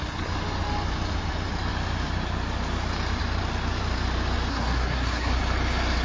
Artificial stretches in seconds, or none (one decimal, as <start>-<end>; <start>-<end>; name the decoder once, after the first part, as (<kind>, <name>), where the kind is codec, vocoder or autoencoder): 4.5-5.4 (codec, SNAC)